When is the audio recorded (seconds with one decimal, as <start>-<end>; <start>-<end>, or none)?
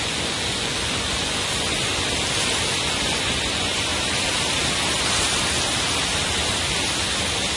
1.9-2.8; 3.9-7.6